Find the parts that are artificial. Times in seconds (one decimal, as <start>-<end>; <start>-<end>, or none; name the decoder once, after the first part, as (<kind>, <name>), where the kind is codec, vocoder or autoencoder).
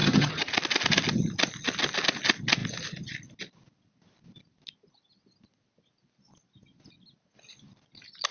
0.0-0.5 (vocoder, HiFi-GAN)